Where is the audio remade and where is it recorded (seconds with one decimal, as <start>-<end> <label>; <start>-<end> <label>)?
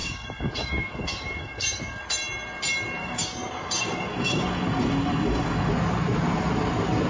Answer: 0.0-2.0 remade; 2.0-3.0 recorded; 3.0-5.7 remade; 5.7-7.1 recorded